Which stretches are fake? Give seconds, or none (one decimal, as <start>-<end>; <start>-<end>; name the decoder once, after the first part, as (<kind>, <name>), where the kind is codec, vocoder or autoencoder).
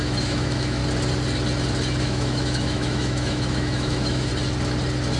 0.0-0.8 (autoencoder, DAC-VAE); 2.0-4.3